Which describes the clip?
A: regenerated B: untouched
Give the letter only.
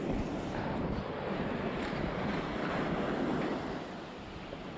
B